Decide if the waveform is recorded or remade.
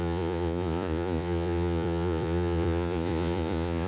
remade